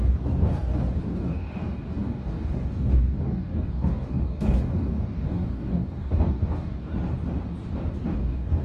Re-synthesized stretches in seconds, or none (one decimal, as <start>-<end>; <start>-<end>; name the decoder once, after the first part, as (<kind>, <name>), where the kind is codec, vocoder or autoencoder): 0.0-6.9 (codec, DAC); 8.1-8.6